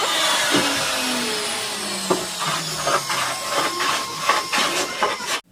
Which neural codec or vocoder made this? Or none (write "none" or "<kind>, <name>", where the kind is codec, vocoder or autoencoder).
none